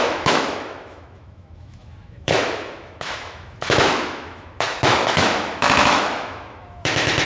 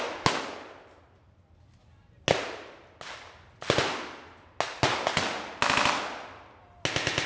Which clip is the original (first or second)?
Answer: second